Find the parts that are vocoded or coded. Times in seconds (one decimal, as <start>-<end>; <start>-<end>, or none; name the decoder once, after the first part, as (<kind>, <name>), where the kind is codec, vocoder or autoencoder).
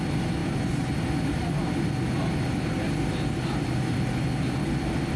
none